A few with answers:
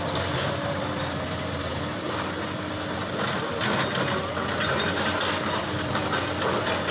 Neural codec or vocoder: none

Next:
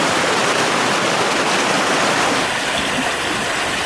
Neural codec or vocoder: vocoder, BigVGAN v2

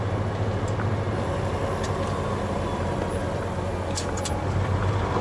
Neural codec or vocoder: none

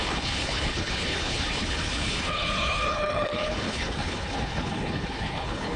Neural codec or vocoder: codec, HILCodec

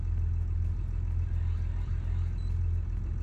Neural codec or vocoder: none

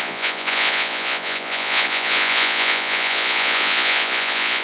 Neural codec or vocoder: vocoder, Vocos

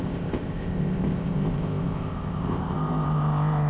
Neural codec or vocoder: codec, ZipCodec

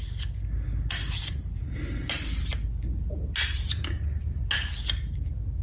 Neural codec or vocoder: none